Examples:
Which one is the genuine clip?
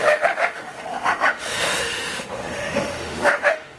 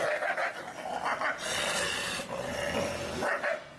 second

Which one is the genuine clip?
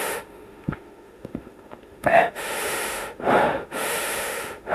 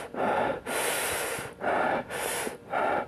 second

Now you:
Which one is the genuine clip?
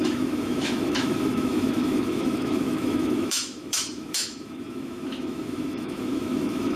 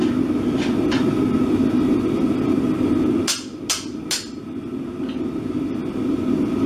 second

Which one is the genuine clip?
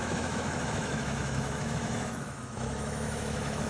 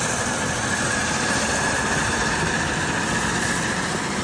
second